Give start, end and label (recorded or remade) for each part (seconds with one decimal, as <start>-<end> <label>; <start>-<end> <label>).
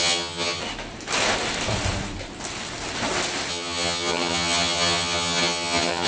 0.0-0.6 remade; 0.6-3.5 recorded; 3.5-6.1 remade